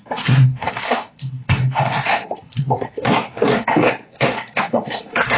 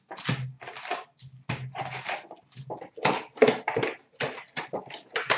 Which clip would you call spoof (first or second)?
first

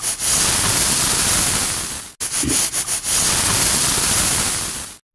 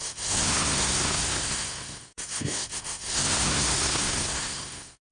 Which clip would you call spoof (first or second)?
second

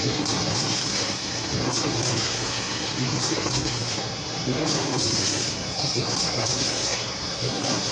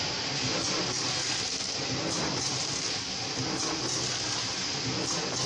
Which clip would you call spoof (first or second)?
first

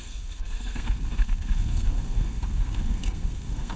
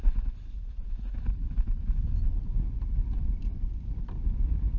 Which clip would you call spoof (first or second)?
first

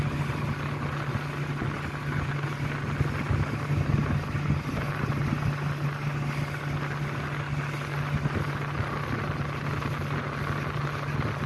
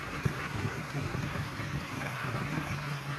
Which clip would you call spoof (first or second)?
second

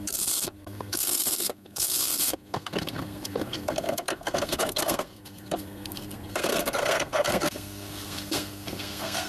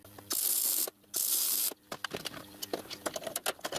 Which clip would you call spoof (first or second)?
first